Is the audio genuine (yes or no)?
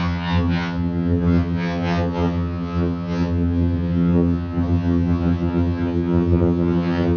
no